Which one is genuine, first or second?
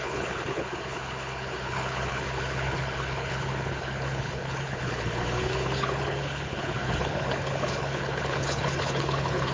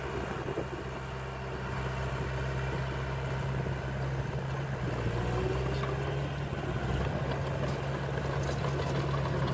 second